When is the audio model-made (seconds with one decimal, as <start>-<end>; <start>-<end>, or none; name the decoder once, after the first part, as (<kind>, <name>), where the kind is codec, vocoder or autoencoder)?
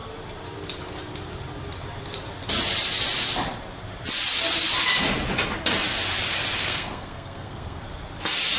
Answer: 6.6-7.8 (codec, SNAC)